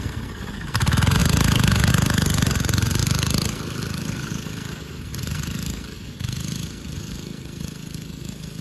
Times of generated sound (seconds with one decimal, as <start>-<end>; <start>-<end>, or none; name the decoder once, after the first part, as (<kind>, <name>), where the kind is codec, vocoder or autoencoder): 0.0-8.6 (codec, SNAC)